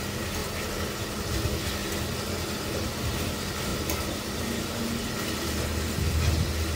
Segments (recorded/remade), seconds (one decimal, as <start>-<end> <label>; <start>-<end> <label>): 0.0-6.8 recorded